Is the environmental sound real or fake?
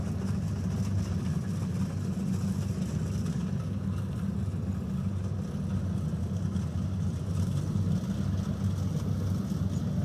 real